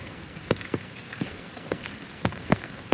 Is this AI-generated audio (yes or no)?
yes